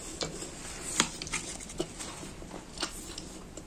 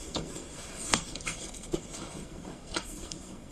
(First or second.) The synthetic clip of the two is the second